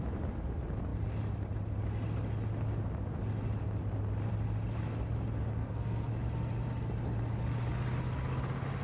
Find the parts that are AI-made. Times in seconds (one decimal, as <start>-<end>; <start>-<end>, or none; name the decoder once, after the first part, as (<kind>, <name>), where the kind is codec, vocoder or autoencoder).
5.6-6.1 (codec, SNAC)